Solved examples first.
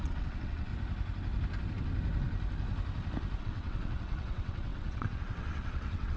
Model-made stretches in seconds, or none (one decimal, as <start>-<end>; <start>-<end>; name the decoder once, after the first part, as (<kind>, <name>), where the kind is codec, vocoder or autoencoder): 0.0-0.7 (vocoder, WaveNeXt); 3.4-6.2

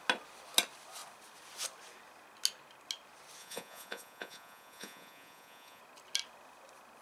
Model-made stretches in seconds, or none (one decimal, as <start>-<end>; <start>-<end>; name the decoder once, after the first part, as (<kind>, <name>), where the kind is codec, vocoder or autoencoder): 3.4-5.8 (vocoder, Vocos)

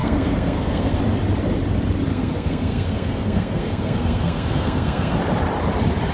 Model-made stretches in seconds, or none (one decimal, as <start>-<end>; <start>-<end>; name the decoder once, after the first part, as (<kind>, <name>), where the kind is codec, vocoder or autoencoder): 0.0-1.0 (codec, SNAC); 2.1-5.2

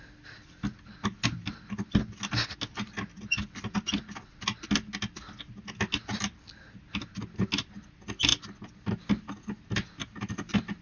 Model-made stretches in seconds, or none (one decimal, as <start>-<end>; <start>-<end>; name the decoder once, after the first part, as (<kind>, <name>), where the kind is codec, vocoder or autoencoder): none

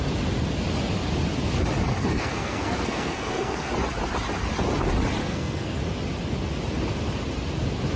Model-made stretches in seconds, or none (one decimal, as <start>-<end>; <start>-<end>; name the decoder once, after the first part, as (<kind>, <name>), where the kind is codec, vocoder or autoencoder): 1.9-3.7 (codec, SNAC); 5.2-5.8

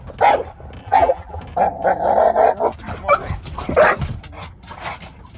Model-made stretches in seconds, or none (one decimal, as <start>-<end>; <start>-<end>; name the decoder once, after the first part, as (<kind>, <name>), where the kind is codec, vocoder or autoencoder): 0.8-1.4 (vocoder, BigVGAN v2)